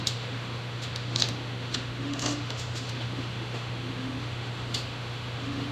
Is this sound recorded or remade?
remade